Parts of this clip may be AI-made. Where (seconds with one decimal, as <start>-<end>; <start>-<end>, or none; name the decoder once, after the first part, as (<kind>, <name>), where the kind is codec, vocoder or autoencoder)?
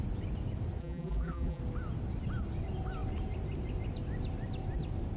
0.8-1.6 (vocoder, BigVGAN v2)